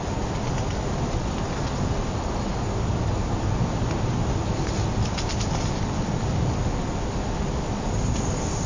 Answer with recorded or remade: recorded